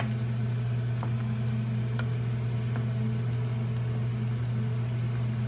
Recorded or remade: recorded